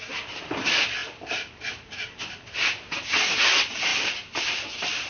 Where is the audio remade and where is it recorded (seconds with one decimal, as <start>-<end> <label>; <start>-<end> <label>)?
0.0-1.0 recorded; 1.0-1.5 remade; 1.5-3.9 recorded; 3.9-5.1 remade

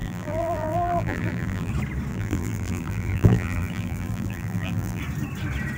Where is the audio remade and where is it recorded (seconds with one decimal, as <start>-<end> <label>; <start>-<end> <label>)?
0.0-1.7 remade; 1.7-2.1 recorded; 2.1-5.0 remade; 5.0-5.8 recorded

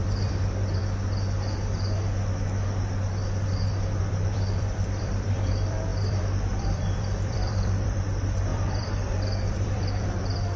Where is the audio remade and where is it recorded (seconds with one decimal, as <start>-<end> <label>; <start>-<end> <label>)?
0.0-0.8 remade; 0.8-4.0 recorded; 4.0-10.6 remade

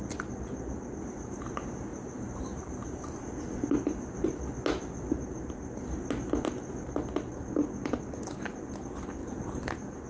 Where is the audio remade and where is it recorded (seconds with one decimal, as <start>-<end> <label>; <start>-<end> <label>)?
0.0-1.9 recorded; 1.9-3.2 remade; 3.2-9.2 recorded; 9.2-9.7 remade; 9.7-10.1 recorded